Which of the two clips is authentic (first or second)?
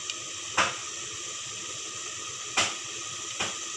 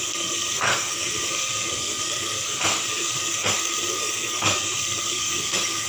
first